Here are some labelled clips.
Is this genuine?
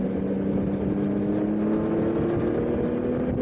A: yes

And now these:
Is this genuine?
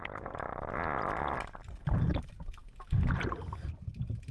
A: yes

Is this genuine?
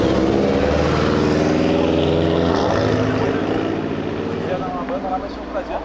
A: yes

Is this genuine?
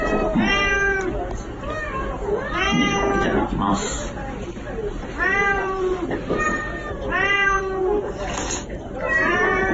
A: no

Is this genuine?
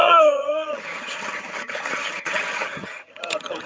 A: no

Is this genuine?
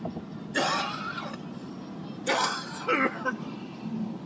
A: yes